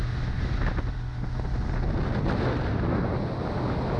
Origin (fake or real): real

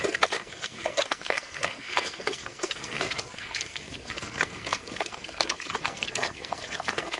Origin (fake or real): fake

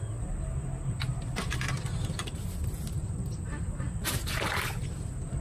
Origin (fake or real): real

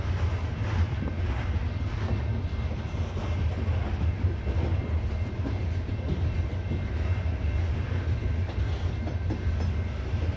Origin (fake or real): real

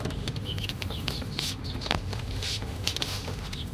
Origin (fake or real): fake